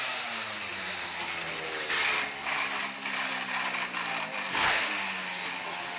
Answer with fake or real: real